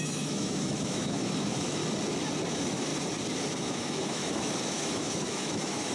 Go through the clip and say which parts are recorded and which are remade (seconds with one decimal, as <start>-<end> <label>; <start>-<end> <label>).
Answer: 0.0-1.8 remade; 1.8-2.5 recorded; 2.5-2.9 remade; 2.9-3.6 recorded; 3.6-5.9 remade